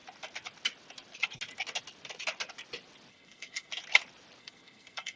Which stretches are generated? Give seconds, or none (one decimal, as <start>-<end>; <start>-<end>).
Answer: 3.1-3.7; 4.4-5.2